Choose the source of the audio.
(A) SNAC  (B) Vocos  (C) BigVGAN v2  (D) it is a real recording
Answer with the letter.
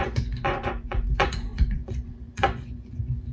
B